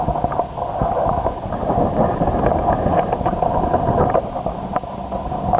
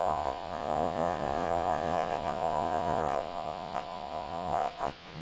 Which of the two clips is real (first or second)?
first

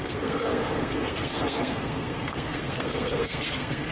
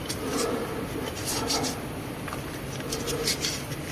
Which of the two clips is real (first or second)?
second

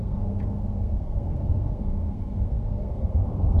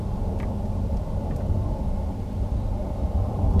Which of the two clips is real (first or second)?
second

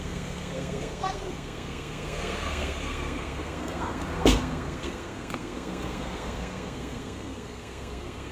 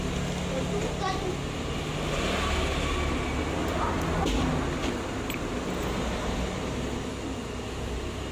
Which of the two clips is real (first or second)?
second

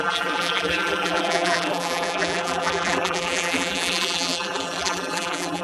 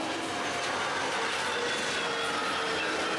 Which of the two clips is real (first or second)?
second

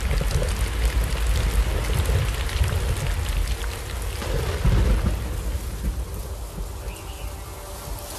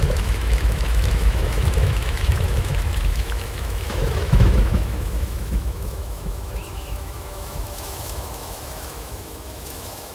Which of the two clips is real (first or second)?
first